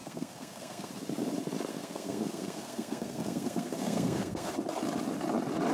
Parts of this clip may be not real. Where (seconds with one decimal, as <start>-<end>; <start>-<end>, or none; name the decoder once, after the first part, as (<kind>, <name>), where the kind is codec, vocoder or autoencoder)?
0.0-0.9 (codec, SNAC); 1.7-4.5